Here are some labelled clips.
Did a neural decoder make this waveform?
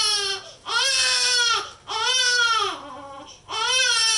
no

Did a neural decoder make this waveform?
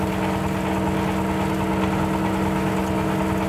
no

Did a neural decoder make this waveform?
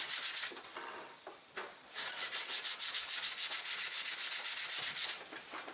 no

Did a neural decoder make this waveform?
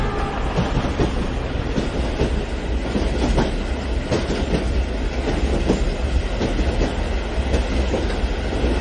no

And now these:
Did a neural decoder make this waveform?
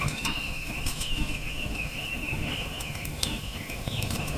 yes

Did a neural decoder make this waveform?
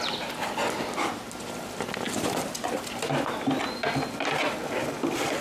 no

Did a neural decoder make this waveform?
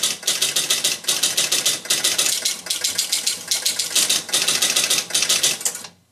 no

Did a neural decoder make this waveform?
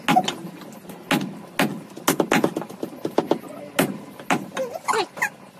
no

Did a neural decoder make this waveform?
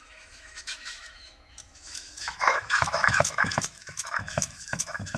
yes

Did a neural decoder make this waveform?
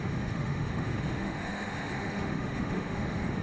yes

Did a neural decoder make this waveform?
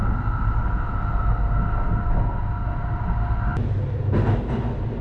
no